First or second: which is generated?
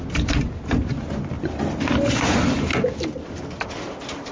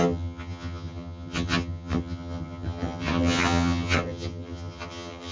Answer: second